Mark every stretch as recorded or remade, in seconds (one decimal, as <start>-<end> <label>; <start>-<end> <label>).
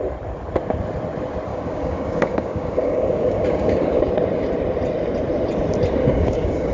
0.0-1.5 recorded; 1.5-4.1 remade; 4.1-6.0 recorded; 6.0-6.7 remade